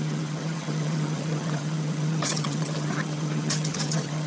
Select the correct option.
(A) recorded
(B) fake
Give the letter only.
B